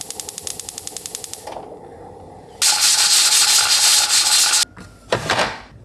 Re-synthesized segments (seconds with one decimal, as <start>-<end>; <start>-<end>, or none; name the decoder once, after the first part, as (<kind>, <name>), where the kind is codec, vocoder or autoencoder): none